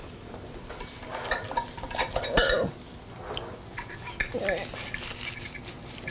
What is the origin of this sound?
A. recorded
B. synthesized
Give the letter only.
A